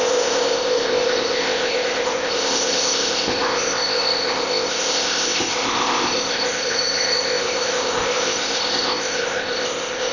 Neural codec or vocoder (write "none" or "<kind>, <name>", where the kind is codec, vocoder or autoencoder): codec, ZipCodec